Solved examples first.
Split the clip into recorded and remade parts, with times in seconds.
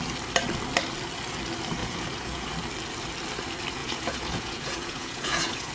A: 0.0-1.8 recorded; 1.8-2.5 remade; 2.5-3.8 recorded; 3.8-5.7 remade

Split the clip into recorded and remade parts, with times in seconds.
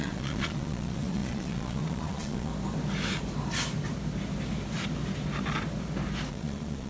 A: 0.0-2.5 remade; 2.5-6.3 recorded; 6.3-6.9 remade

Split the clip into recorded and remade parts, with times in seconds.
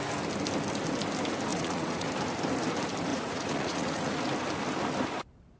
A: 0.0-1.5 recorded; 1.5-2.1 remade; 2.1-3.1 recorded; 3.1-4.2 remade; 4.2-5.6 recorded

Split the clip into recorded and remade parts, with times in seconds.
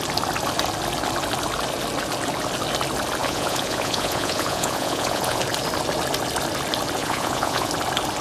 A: 0.0-3.2 recorded; 3.2-5.4 remade; 5.4-7.0 recorded; 7.0-7.7 remade; 7.7-8.2 recorded